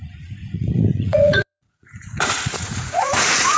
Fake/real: fake